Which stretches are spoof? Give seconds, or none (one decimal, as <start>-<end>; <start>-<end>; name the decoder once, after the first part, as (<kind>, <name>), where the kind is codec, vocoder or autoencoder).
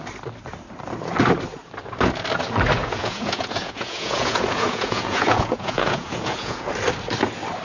2.8-6.7 (vocoder, Vocos)